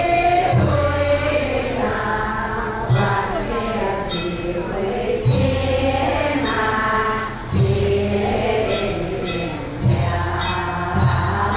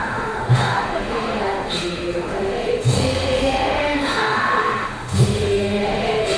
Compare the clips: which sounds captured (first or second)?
first